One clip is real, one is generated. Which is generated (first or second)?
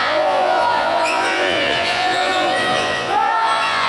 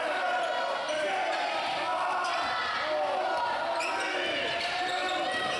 first